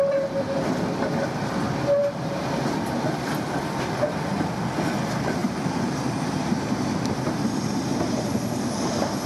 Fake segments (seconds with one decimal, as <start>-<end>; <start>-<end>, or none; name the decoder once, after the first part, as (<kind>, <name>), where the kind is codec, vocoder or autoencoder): 2.0-2.9 (vocoder, BigVGAN v2); 5.4-7.2